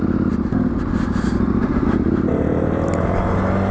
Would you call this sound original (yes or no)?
yes